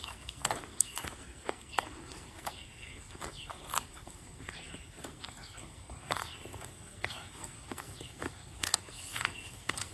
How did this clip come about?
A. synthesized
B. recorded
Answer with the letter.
A